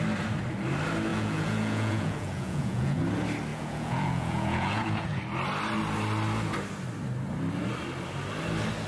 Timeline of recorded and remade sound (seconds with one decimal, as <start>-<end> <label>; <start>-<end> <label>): 0.0-1.1 recorded; 1.1-3.0 remade; 3.0-3.5 recorded; 3.5-5.2 remade; 5.2-8.9 recorded